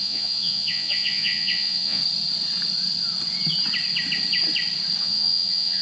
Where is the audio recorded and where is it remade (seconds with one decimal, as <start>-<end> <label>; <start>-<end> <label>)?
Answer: 0.0-2.0 remade; 2.0-5.0 recorded; 5.0-5.8 remade